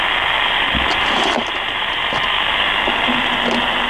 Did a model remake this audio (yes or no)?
no